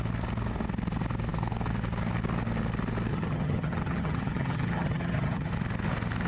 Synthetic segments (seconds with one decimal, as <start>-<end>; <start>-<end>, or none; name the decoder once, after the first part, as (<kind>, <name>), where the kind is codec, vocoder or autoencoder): 3.1-5.5 (vocoder, HiFi-GAN)